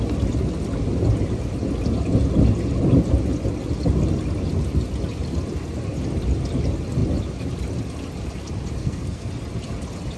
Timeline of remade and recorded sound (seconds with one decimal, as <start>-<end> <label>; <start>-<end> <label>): 0.0-8.8 recorded; 8.8-9.3 remade; 9.3-10.2 recorded